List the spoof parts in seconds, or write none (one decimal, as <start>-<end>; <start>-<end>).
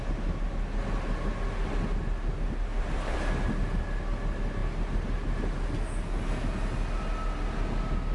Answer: 2.7-3.4